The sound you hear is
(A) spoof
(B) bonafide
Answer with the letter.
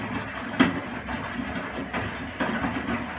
B